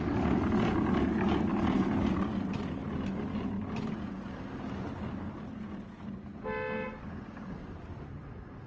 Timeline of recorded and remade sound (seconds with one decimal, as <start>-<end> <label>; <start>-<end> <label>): 0.0-8.7 recorded